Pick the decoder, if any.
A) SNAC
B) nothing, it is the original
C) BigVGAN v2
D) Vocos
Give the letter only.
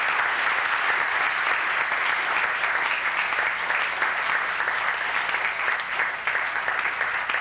B